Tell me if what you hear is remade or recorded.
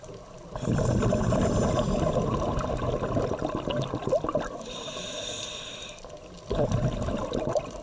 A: recorded